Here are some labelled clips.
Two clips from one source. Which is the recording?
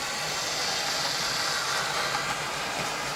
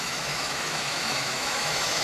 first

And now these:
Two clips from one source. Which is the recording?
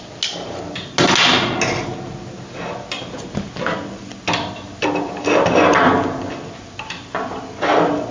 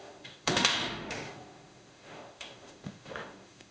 first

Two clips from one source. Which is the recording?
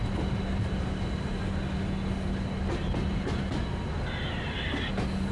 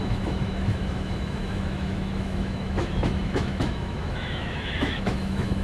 first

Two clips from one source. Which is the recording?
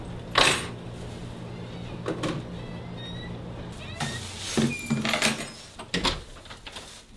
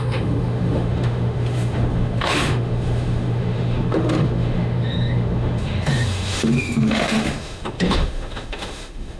first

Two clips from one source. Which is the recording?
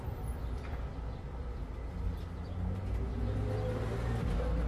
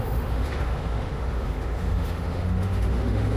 first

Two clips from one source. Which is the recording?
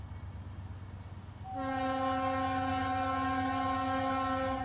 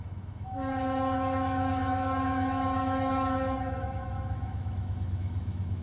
first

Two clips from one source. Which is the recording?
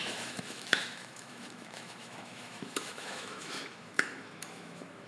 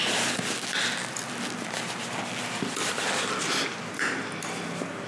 second